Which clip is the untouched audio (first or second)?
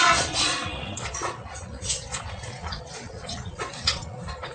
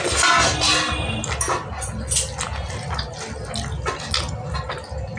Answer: second